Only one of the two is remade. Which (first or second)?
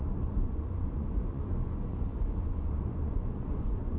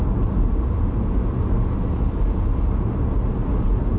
first